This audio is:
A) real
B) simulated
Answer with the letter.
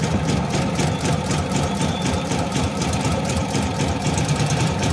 B